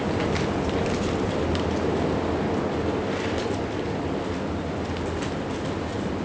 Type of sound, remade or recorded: recorded